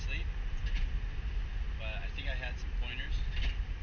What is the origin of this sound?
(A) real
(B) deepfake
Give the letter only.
A